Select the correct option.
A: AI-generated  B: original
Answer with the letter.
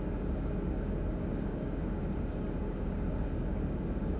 A